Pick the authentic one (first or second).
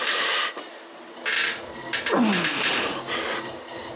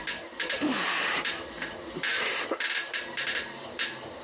first